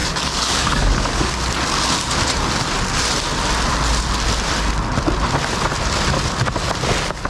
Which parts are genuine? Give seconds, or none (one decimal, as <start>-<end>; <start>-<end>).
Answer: 1.3-7.3